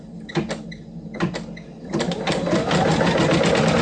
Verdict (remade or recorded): recorded